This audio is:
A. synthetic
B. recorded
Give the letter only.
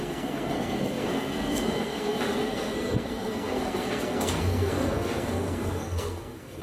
A